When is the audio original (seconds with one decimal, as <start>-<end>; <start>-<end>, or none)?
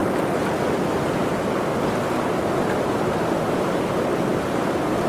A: 0.6-1.2; 4.3-5.1